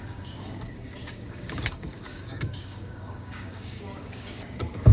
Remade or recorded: remade